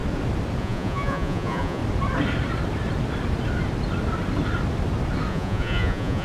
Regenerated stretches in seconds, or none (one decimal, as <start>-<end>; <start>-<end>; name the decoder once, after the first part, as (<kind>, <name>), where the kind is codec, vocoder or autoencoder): 0.6-1.8 (vocoder, Vocos); 5.3-6.2